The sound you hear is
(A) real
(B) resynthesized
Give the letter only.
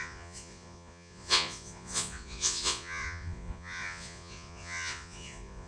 B